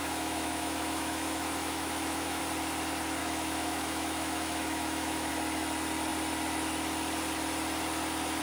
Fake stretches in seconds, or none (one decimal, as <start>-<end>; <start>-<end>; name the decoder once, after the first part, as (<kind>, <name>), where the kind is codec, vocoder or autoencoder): 0.0-2.4 (autoencoder, DAC-VAE); 3.2-5.3